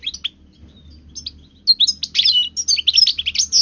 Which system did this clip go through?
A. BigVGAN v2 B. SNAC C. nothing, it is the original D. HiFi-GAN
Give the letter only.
C